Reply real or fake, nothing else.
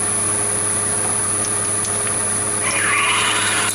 real